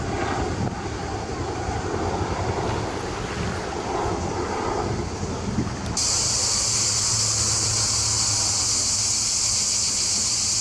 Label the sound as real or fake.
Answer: real